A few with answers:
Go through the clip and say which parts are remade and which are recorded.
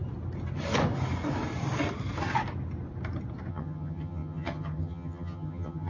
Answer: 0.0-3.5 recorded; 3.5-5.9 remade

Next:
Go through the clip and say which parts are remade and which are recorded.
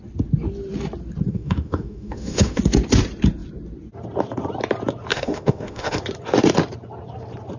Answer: 0.0-1.3 recorded; 1.3-2.6 remade; 2.6-5.1 recorded; 5.1-6.0 remade; 6.0-7.6 recorded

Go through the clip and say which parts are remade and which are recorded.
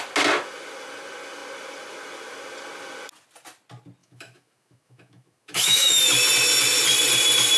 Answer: 0.0-4.0 recorded; 4.0-6.0 remade; 6.0-7.6 recorded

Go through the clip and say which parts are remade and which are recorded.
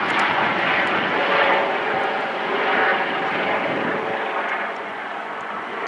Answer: 0.0-2.9 remade; 2.9-4.4 recorded; 4.4-5.9 remade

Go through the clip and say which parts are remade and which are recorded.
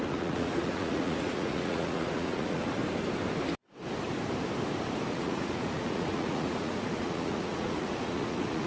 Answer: 0.0-2.8 remade; 2.8-5.1 recorded; 5.1-8.7 remade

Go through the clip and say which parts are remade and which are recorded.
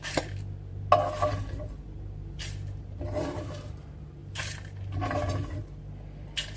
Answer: 0.0-0.7 remade; 0.7-1.3 recorded; 1.3-6.6 remade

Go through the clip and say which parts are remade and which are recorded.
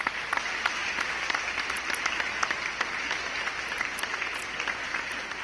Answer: 0.0-5.4 recorded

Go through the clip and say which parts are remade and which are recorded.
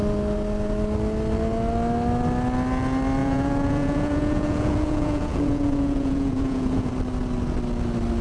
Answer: 0.0-3.2 recorded; 3.2-6.9 remade; 6.9-8.2 recorded